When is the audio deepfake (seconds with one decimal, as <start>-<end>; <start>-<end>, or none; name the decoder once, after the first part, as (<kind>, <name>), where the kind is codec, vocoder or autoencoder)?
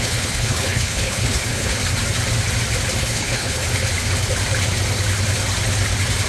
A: 0.0-1.8 (codec, HILCodec); 3.0-3.6